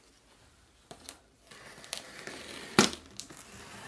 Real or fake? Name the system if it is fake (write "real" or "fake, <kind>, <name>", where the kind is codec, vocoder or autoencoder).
real